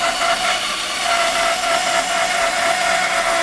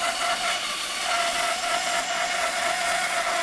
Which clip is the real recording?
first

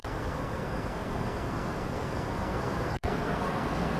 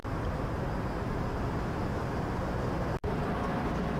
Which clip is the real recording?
second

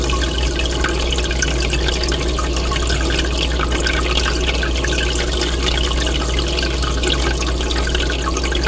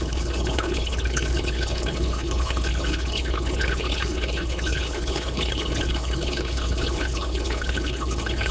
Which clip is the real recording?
first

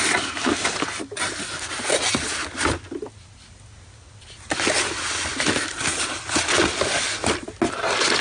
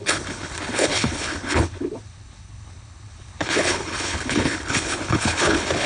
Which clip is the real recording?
first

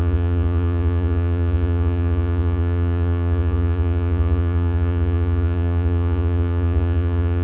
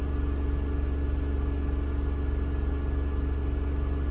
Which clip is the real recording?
second